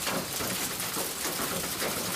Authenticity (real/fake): real